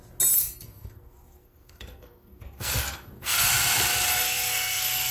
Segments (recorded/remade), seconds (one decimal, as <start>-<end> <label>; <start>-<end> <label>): 0.0-0.4 recorded; 0.4-3.5 remade; 3.5-4.1 recorded; 4.1-5.1 remade